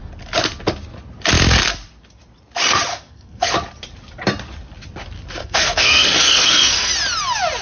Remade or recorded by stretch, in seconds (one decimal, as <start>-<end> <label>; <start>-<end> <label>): 0.0-2.9 recorded; 2.9-3.5 remade; 3.5-5.4 recorded; 5.4-6.9 remade; 6.9-7.6 recorded